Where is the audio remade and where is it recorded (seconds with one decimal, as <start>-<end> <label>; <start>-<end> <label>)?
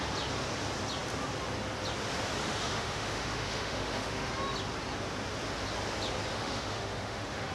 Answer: 0.0-2.4 recorded; 2.4-4.3 remade; 4.3-6.3 recorded; 6.3-7.5 remade